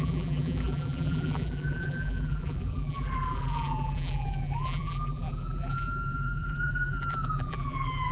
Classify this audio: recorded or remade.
remade